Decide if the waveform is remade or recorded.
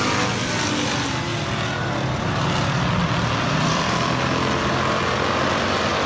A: recorded